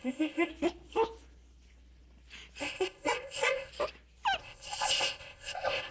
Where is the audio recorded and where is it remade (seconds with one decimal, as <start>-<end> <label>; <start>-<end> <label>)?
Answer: 0.0-0.5 remade; 0.5-2.6 recorded; 2.6-3.7 remade; 3.7-4.4 recorded; 4.4-5.9 remade